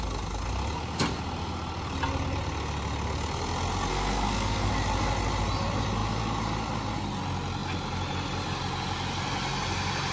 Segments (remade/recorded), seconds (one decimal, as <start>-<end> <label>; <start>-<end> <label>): 0.0-3.9 recorded; 3.9-4.7 remade; 4.7-10.1 recorded